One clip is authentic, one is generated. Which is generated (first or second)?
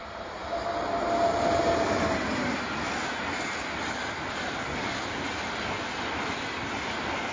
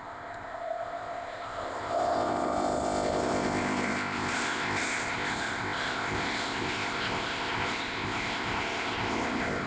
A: second